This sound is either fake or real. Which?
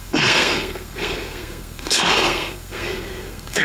fake